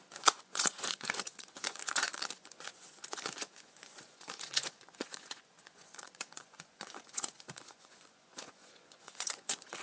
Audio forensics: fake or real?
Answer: fake